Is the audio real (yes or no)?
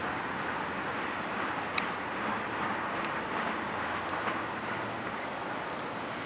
yes